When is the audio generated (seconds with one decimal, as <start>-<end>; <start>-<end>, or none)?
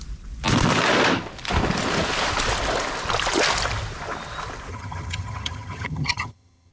4.7-6.7